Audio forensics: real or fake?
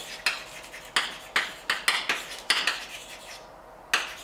real